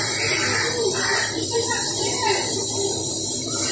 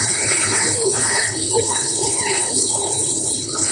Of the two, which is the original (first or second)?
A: first